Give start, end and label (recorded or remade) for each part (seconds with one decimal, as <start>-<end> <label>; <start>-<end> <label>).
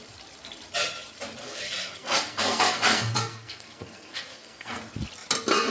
0.0-1.4 recorded; 1.4-4.8 remade; 4.8-5.7 recorded